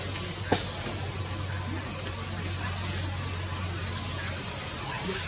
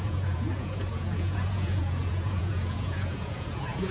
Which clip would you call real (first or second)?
first